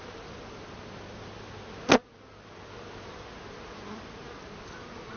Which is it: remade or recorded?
recorded